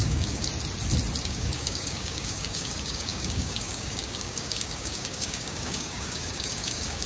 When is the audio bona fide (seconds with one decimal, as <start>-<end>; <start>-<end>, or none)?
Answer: 0.5-1.2